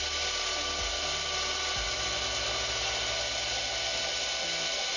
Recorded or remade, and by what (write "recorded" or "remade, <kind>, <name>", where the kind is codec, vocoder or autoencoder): recorded